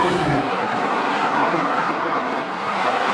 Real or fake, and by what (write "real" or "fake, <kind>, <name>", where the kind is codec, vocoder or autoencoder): fake, codec, SNAC